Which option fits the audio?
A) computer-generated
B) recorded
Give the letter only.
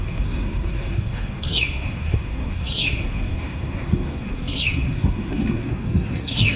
A